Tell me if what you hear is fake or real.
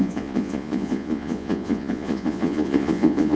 fake